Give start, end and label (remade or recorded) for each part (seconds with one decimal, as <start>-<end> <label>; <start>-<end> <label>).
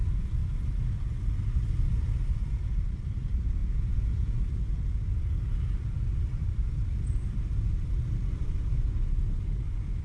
0.0-3.6 recorded; 3.6-4.4 remade; 4.4-10.0 recorded